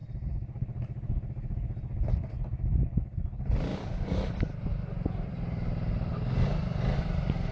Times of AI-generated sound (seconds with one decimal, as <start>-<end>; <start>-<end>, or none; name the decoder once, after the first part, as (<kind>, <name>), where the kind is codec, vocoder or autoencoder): 2.3-6.1 (vocoder, BigVGAN v2)